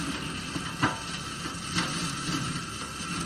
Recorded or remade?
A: recorded